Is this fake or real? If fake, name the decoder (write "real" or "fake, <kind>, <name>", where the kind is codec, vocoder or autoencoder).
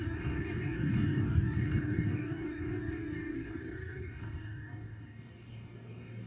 fake, codec, DAC